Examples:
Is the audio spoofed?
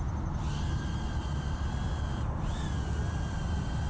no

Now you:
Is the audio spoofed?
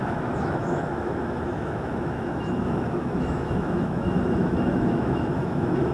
yes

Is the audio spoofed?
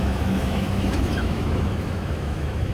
yes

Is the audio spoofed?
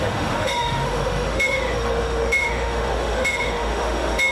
yes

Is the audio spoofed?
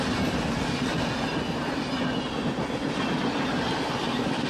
no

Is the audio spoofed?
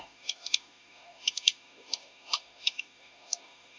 yes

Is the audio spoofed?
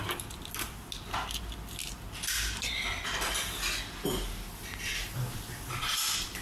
no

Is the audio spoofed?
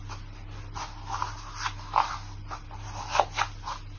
no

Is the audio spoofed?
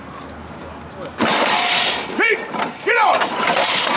no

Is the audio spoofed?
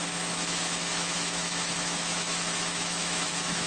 yes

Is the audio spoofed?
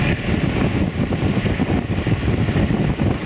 no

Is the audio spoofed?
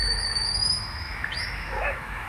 yes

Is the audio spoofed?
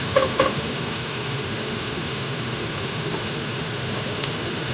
yes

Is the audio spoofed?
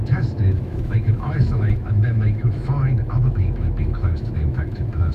yes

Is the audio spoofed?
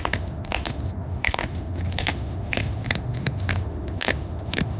yes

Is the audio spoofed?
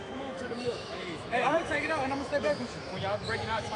yes